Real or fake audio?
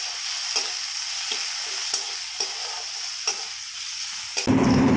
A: real